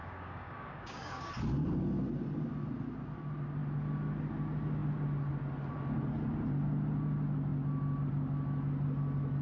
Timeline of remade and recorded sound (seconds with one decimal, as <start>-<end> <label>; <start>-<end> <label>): 0.0-1.3 remade; 1.3-9.4 recorded